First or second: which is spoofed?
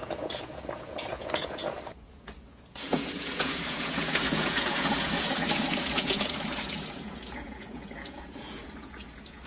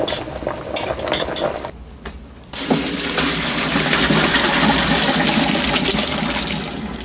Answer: first